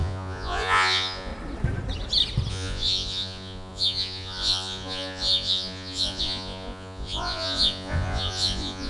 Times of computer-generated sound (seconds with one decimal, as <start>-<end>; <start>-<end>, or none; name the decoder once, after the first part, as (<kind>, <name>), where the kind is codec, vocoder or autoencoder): 0.0-1.3 (vocoder, Vocos); 2.5-8.9